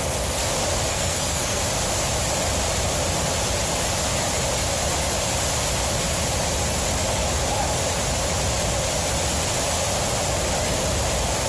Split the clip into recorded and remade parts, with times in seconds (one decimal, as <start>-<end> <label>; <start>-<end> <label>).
0.0-0.9 recorded; 0.9-1.6 remade; 1.6-11.5 recorded